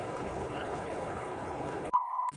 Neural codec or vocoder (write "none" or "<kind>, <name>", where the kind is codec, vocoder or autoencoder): codec, HILCodec